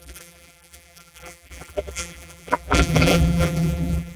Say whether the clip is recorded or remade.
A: remade